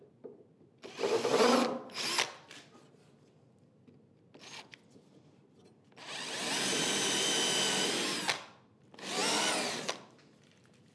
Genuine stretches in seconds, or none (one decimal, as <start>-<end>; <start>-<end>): 0.0-9.2